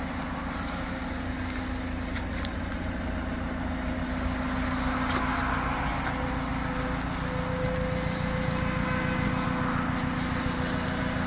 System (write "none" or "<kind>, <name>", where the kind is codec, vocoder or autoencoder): none